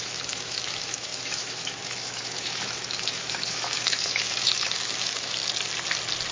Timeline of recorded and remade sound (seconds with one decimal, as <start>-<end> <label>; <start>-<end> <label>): 0.0-5.4 remade; 5.4-6.3 recorded